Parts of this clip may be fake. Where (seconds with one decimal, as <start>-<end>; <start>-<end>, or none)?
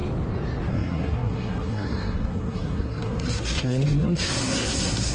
0.7-5.1